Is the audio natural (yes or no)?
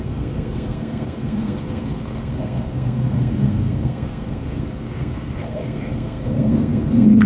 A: no